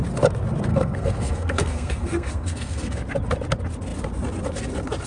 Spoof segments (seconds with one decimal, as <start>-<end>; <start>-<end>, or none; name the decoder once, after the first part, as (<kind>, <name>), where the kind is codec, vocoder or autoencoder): 0.7-3.0 (codec, SNAC)